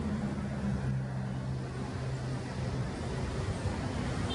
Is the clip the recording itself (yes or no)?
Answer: yes